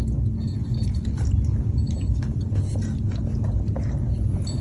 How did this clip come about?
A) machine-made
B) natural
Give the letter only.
B